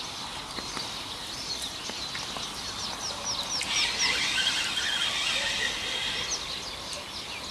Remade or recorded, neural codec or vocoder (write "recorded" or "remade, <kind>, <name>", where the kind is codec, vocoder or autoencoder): recorded